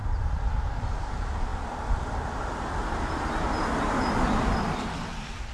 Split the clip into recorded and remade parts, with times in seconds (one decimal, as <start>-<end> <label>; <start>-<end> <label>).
0.0-5.5 remade